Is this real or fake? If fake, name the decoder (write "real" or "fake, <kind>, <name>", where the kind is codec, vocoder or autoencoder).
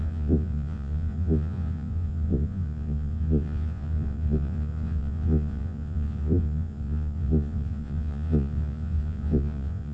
fake, vocoder, Vocos